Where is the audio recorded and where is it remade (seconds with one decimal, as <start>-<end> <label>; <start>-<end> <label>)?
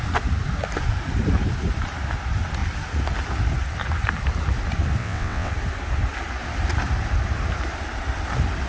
0.0-5.0 recorded; 5.0-5.5 remade; 5.5-8.7 recorded